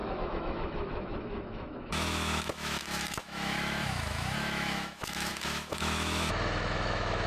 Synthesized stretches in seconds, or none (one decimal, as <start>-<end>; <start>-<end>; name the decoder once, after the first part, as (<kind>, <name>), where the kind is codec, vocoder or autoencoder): 0.0-7.3 (autoencoder, DAC-VAE)